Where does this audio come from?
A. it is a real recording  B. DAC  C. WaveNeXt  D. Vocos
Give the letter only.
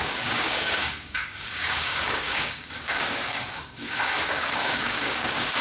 B